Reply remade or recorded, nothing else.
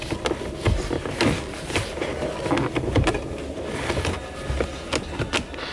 recorded